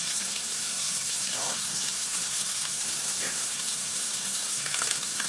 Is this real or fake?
fake